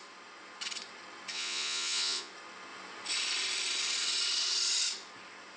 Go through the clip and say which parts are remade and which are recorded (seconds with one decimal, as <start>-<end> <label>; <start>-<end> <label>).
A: 0.0-1.3 recorded; 1.3-2.3 remade; 2.3-5.6 recorded

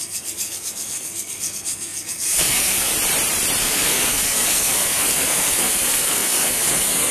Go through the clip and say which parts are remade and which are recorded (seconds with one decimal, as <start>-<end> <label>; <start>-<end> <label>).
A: 0.0-2.9 remade; 2.9-3.6 recorded; 3.6-7.1 remade

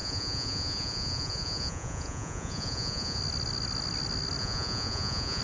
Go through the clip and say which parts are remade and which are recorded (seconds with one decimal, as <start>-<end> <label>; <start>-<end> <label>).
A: 0.0-3.2 remade; 3.2-4.4 recorded; 4.4-5.4 remade

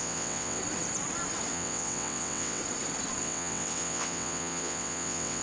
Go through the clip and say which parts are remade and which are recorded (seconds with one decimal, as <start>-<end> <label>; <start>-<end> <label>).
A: 0.0-0.6 remade; 0.6-1.5 recorded; 1.5-2.6 remade; 2.6-3.2 recorded; 3.2-5.4 remade

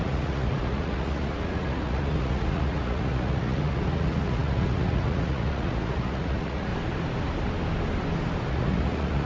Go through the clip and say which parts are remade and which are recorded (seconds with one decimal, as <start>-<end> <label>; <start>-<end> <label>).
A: 0.0-6.7 remade; 6.7-8.5 recorded; 8.5-9.2 remade

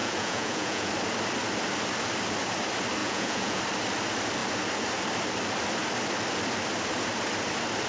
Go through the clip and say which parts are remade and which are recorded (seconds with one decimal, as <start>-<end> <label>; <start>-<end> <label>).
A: 0.0-0.9 remade; 0.9-3.0 recorded; 3.0-3.6 remade; 3.6-7.9 recorded

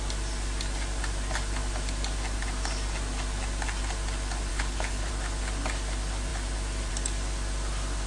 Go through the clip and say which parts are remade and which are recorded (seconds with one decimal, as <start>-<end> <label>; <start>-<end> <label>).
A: 0.0-4.5 recorded; 4.5-5.1 remade; 5.1-8.1 recorded

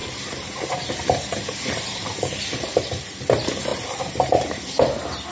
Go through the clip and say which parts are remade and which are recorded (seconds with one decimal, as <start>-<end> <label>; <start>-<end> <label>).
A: 0.0-3.2 remade; 3.2-3.7 recorded; 3.7-4.6 remade; 4.6-5.3 recorded